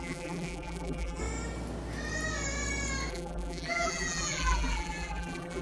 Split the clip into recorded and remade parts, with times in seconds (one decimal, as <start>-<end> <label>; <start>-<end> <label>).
0.0-1.2 remade; 1.2-3.1 recorded; 3.1-5.6 remade